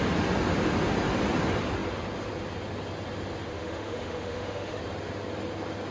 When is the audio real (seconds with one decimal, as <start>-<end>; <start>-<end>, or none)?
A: 0.0-3.5; 4.8-5.9